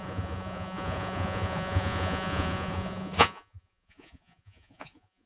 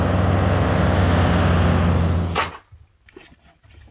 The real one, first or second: second